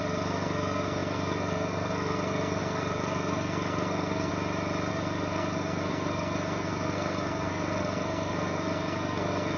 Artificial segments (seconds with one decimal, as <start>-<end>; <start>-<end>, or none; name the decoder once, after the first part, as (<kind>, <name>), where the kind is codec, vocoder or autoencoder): 0.0-4.3 (codec, SNAC); 4.9-9.6

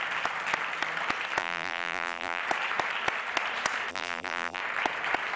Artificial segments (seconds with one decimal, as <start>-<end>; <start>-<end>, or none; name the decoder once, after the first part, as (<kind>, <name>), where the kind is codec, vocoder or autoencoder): 1.4-2.4 (vocoder, BigVGAN v2); 3.9-4.6

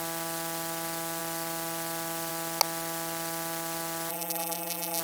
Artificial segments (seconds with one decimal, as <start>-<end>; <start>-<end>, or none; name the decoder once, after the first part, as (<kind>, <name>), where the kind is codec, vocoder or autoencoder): 4.1-5.0 (vocoder, BigVGAN v2)

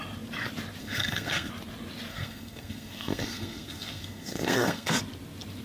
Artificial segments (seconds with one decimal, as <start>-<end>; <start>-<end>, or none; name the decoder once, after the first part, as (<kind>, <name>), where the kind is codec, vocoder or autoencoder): 0.8-1.5 (codec, SNAC); 2.1-5.0

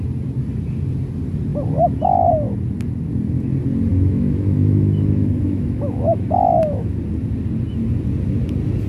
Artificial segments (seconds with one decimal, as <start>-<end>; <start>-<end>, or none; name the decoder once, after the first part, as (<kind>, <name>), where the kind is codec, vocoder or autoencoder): 3.9-7.0 (autoencoder, DAC-VAE)

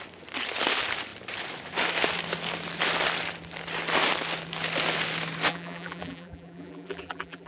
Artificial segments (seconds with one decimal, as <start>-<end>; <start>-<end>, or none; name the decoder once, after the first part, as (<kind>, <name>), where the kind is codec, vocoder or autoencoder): 5.5-7.5 (vocoder, BigVGAN v2)

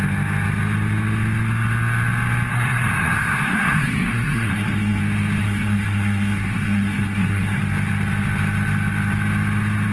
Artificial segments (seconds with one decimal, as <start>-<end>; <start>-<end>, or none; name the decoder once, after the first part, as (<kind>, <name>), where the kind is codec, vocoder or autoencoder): 2.5-5.0 (codec, SNAC); 5.4-7.6

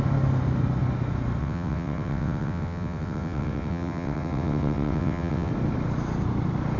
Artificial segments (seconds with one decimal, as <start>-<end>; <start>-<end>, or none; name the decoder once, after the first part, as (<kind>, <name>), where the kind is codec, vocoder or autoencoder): 1.4-5.5 (vocoder, WaveNeXt)